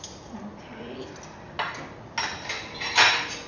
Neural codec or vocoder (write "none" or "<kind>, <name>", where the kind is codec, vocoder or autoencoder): none